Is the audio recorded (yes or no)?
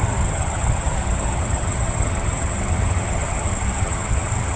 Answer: no